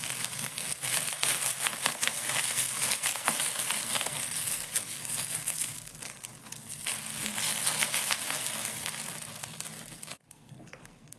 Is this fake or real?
fake